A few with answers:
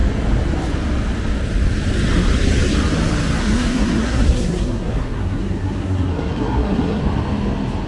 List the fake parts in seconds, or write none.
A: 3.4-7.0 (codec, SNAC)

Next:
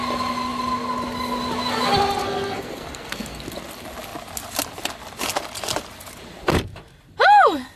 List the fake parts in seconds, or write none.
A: 2.2-3.4 (codec, SNAC)

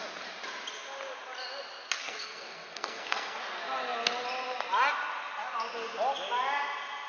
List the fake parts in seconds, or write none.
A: 2.0-3.4 (codec, SNAC)

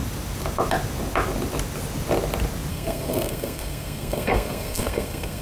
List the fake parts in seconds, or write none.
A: 2.7-5.4 (codec, SNAC)